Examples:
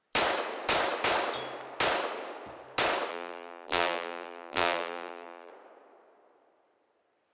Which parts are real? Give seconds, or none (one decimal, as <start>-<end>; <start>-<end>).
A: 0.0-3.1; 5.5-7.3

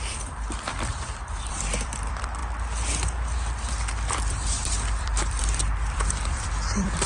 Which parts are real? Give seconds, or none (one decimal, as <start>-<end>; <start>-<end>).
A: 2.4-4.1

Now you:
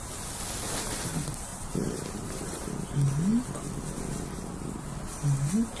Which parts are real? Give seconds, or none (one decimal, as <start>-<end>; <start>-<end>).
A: 0.0-1.5; 2.7-5.8

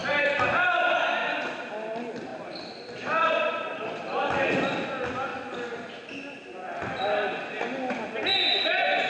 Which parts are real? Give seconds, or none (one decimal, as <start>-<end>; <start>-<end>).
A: 0.5-2.3; 4.0-9.1

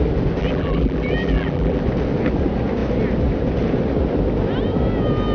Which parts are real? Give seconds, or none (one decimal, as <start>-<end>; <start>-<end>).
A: 0.0-0.4; 1.8-5.3